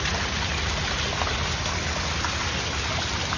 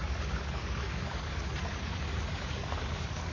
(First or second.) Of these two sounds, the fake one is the second